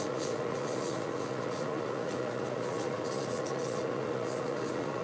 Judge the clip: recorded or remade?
remade